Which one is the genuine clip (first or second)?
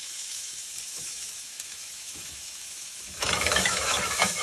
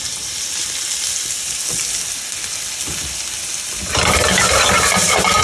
second